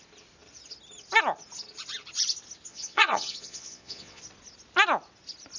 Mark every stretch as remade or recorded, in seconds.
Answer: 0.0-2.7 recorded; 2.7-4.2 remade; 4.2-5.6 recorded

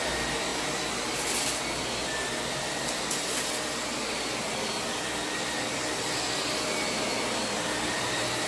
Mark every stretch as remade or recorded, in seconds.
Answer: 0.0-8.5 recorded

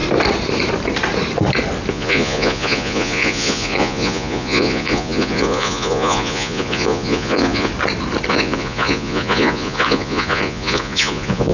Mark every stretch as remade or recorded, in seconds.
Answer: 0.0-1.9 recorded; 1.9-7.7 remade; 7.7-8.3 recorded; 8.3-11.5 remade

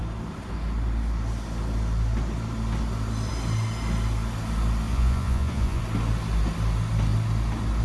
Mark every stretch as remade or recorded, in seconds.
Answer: 0.0-4.9 recorded; 4.9-5.8 remade; 5.8-7.8 recorded

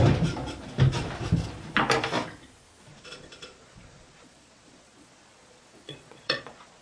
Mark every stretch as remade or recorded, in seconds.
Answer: 0.0-2.9 recorded; 2.9-6.8 remade

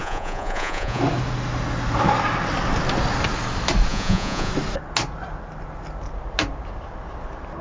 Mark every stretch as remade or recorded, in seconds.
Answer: 0.0-1.0 remade; 1.0-3.9 recorded; 3.9-4.5 remade; 4.5-7.6 recorded

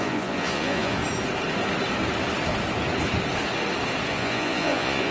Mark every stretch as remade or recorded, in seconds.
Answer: 0.0-1.0 remade; 1.0-4.1 recorded; 4.1-5.1 remade

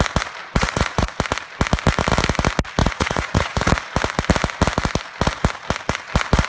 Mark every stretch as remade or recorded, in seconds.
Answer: 0.0-0.4 recorded; 0.4-1.1 remade; 1.1-2.8 recorded; 2.8-3.7 remade; 3.7-6.5 recorded